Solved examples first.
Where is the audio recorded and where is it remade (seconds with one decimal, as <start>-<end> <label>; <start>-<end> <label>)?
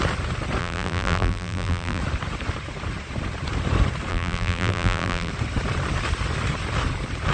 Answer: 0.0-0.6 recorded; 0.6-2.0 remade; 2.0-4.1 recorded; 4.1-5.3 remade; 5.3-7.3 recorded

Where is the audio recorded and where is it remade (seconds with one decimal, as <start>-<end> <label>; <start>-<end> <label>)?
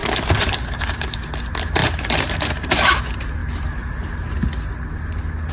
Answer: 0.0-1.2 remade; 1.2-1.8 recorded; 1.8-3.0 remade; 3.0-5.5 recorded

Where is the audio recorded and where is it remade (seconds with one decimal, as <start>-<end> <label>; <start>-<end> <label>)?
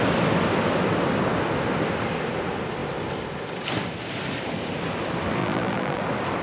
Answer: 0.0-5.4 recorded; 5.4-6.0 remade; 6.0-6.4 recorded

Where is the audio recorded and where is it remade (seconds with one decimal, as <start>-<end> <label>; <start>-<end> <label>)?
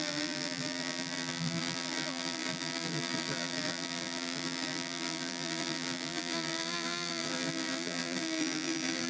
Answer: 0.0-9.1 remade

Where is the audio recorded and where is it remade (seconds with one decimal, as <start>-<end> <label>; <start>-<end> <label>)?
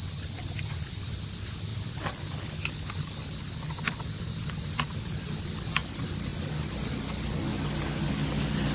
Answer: 0.0-7.5 remade; 7.5-8.1 recorded; 8.1-8.7 remade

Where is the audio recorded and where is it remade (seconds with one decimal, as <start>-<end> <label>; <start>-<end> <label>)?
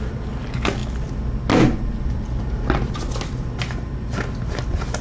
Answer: 0.0-5.0 recorded